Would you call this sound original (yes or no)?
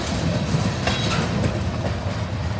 yes